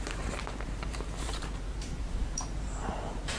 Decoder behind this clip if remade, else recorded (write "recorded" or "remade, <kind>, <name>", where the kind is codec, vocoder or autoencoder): remade, vocoder, BigVGAN v2